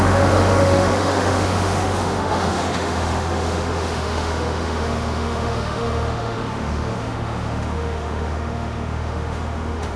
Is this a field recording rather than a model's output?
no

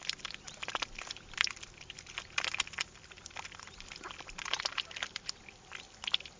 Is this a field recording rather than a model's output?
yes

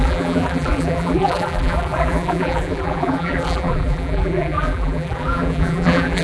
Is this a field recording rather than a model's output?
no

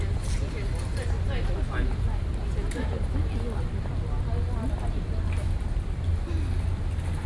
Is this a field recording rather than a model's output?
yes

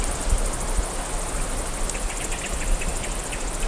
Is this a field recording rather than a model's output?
yes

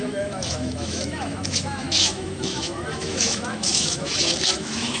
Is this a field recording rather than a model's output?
no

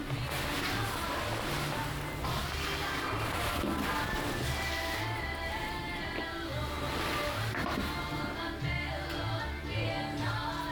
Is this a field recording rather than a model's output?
yes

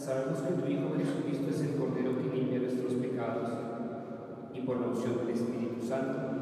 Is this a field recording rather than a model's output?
yes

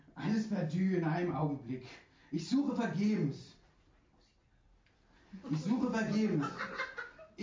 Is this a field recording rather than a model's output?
yes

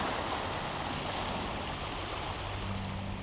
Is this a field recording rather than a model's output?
yes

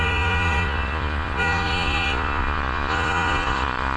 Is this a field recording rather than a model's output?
no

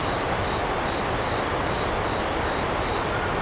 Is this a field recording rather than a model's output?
yes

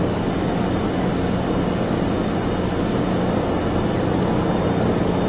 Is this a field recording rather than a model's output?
yes